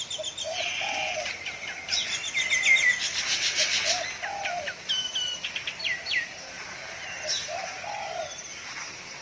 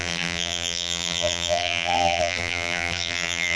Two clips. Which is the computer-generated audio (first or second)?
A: second